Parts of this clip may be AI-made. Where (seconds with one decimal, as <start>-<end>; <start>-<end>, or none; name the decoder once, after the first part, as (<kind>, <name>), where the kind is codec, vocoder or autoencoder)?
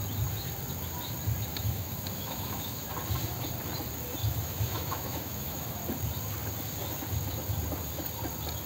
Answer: 1.5-2.9 (autoencoder, DAC-VAE); 4.2-5.8